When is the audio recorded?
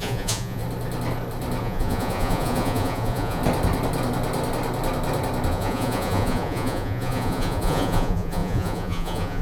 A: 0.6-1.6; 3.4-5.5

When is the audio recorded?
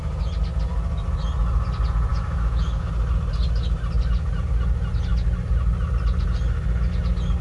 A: 0.0-2.1; 2.9-7.4